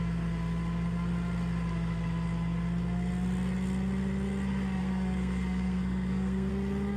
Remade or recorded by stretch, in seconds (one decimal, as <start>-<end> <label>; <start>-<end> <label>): 0.0-4.8 recorded; 4.8-6.5 remade; 6.5-7.0 recorded